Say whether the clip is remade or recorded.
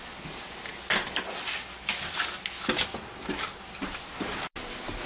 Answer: recorded